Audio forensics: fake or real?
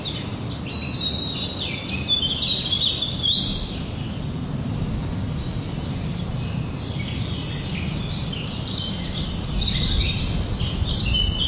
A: real